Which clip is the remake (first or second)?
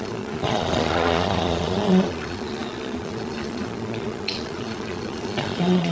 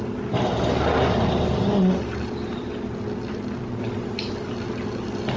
first